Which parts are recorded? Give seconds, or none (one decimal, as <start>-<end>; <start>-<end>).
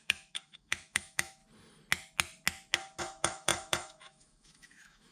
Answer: 1.4-3.0